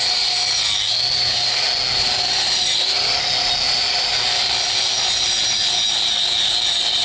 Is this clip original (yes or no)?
yes